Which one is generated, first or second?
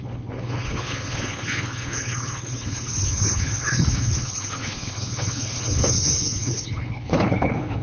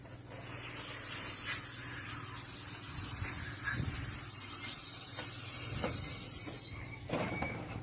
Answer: first